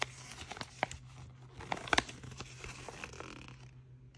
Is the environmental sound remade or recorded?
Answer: recorded